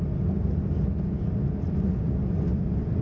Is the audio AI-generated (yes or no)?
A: no